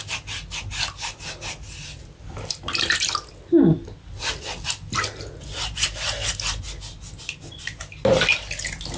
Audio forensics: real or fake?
real